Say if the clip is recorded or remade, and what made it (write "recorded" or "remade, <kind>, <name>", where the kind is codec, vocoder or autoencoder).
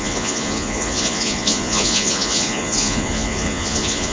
remade, vocoder, Vocos